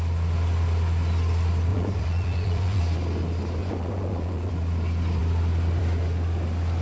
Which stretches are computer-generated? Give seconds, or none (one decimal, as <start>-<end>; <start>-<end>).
1.7-2.8; 3.6-4.5

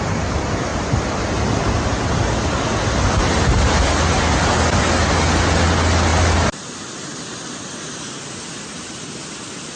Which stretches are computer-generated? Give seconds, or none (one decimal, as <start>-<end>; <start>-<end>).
none

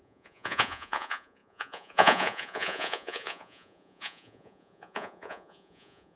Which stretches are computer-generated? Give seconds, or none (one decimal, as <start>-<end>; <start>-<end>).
0.0-6.2

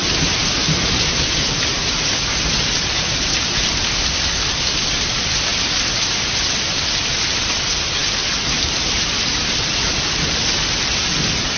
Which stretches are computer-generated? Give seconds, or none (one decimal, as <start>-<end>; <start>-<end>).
none

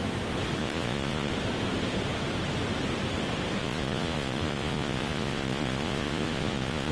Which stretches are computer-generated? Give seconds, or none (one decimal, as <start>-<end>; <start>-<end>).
0.6-1.3; 3.6-6.9